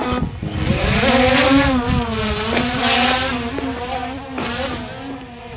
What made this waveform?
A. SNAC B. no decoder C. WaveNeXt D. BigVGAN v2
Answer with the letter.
B